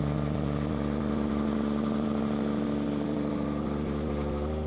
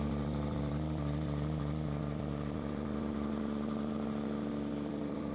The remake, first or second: second